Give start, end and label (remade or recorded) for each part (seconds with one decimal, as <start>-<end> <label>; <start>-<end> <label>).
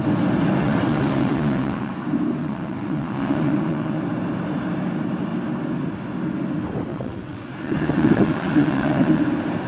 0.0-0.6 recorded; 0.6-1.9 remade; 1.9-2.4 recorded; 2.4-4.0 remade; 4.0-6.9 recorded; 6.9-9.2 remade; 9.2-9.7 recorded